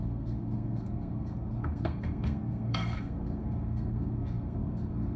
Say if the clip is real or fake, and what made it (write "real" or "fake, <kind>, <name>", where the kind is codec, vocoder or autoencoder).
fake, codec, SNAC